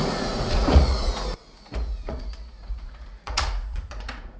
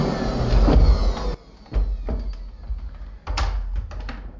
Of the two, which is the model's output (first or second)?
first